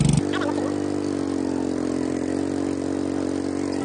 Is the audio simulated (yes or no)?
no